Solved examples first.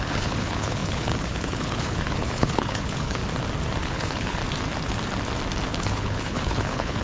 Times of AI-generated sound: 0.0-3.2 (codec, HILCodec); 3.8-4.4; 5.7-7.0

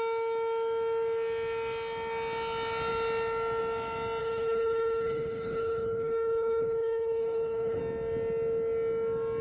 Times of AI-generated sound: 4.2-7.8 (codec, HILCodec)

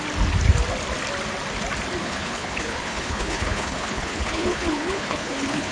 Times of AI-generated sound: 2.0-5.7 (codec, HILCodec)

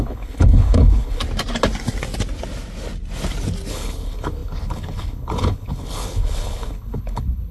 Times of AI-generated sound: 0.0-1.2 (codec, HILCodec); 3.7-7.5

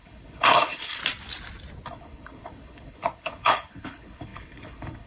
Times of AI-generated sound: 0.0-1.0 (codec, HILCodec); 1.9-5.1